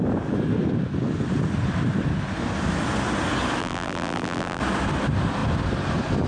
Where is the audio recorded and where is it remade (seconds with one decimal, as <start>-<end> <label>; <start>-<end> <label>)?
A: 0.0-3.6 recorded; 3.6-4.6 remade; 4.6-6.3 recorded